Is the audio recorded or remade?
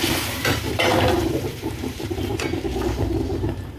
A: remade